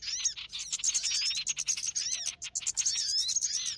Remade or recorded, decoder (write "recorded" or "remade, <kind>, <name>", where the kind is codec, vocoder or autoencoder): recorded